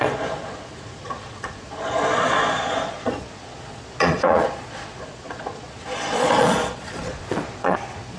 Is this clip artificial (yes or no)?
yes